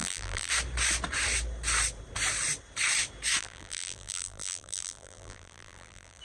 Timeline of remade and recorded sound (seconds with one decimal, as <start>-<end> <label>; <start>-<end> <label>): 0.0-0.5 remade; 0.5-3.4 recorded; 3.4-6.2 remade